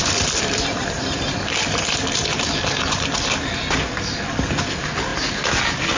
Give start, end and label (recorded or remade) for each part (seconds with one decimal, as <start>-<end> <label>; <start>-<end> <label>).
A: 0.0-3.6 remade; 3.6-6.0 recorded